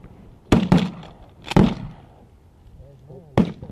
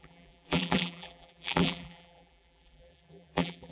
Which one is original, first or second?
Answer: first